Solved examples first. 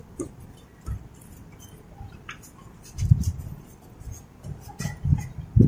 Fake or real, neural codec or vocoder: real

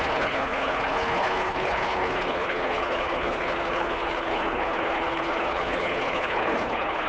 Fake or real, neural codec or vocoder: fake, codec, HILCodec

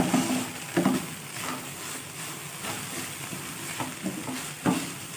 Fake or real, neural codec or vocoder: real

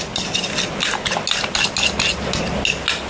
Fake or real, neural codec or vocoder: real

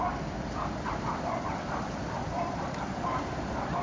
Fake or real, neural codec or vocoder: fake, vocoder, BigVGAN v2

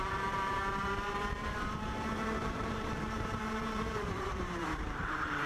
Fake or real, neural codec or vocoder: fake, vocoder, BigVGAN v2